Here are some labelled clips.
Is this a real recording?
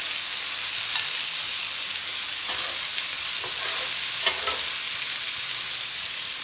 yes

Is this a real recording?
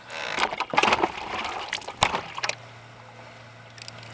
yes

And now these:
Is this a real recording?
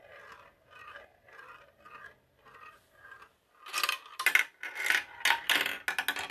yes